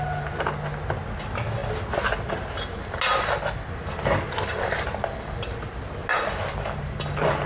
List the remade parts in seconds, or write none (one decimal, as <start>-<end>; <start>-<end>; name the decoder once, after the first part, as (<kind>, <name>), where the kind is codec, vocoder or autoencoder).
none